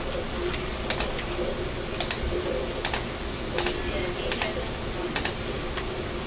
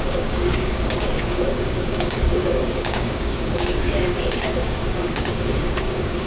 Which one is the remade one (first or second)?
second